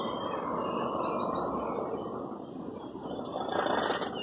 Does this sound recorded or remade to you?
recorded